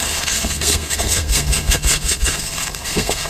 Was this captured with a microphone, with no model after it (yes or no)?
no